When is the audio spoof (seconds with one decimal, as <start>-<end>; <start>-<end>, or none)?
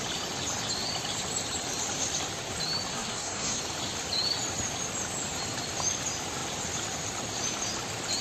2.9-3.6